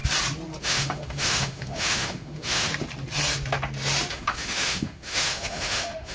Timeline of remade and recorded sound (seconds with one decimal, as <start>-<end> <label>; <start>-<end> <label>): 0.0-0.6 recorded; 0.6-2.7 remade; 2.7-4.1 recorded; 4.1-6.1 remade